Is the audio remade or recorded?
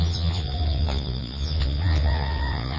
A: remade